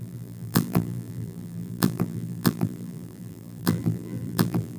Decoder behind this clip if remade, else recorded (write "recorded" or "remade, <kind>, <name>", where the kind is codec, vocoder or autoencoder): remade, vocoder, BigVGAN v2